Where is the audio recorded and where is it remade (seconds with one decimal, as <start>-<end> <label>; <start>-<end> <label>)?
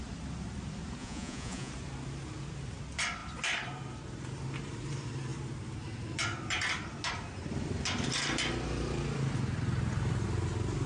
0.0-1.0 recorded; 1.0-1.7 remade; 1.7-10.9 recorded